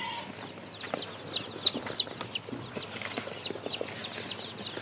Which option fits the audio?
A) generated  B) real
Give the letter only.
B